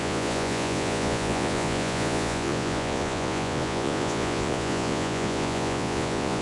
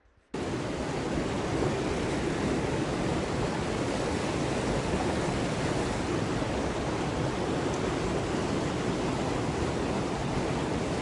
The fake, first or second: first